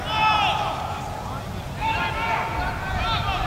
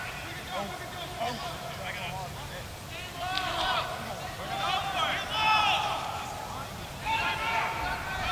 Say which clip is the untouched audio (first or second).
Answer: first